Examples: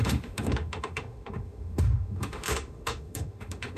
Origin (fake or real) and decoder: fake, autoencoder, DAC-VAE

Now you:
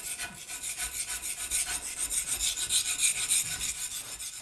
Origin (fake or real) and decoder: real